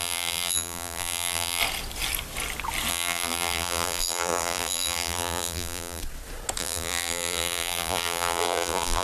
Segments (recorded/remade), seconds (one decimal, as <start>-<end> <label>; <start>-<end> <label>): 0.0-1.6 remade; 1.6-2.9 recorded; 2.9-6.0 remade; 6.0-6.6 recorded; 6.6-9.0 remade